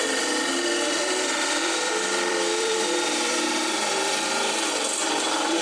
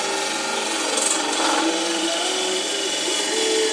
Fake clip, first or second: first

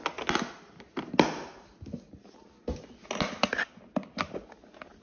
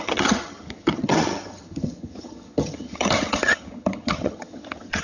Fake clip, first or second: second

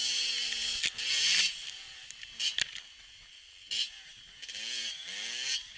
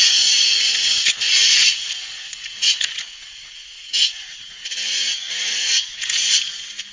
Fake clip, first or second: second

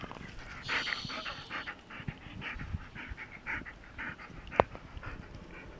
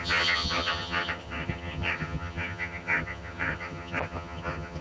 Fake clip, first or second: second